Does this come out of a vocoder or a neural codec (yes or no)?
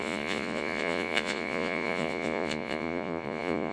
yes